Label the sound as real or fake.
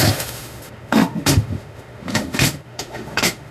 fake